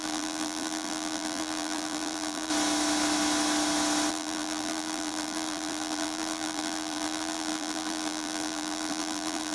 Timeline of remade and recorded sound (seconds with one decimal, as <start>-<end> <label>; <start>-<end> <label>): 0.0-2.5 remade; 2.5-4.1 recorded; 4.1-9.5 remade